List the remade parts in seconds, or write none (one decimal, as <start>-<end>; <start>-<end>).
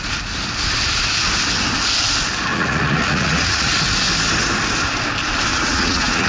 2.5-3.7; 5.5-6.3